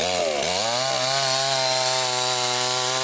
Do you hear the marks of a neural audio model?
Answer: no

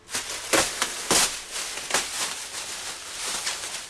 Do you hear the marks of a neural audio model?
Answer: no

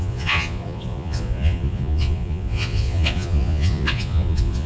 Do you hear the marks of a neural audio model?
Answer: yes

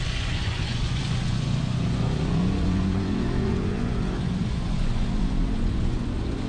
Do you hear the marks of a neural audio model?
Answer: yes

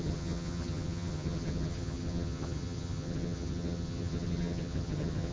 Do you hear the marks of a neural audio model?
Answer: yes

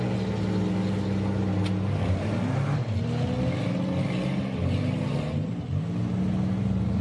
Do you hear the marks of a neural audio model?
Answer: no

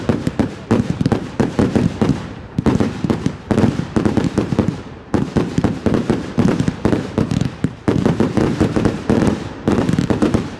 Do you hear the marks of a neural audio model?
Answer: yes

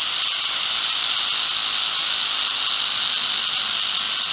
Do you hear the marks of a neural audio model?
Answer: no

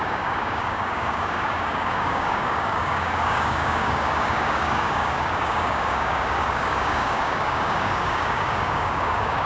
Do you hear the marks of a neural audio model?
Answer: yes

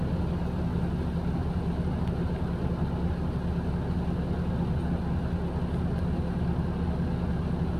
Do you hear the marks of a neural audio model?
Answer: no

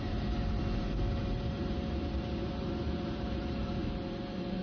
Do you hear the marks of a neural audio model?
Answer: yes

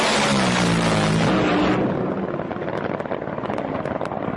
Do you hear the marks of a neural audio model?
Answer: no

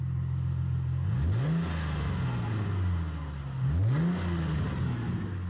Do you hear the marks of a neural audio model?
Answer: no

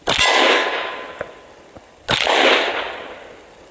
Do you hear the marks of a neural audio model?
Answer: no